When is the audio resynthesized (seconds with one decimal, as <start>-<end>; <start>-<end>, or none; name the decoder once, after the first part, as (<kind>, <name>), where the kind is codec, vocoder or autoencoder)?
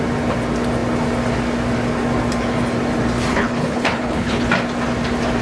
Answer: 3.3-4.5 (codec, HILCodec)